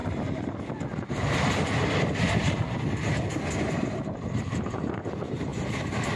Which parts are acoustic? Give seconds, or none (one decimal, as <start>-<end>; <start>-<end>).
0.0-3.7